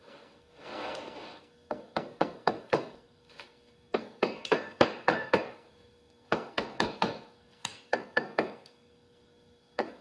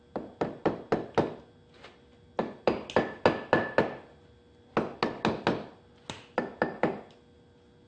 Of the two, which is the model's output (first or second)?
first